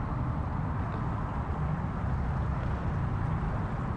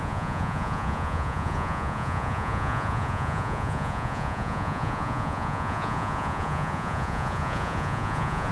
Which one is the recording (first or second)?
first